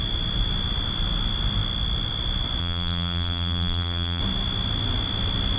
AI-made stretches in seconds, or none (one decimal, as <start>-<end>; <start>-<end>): 2.6-4.2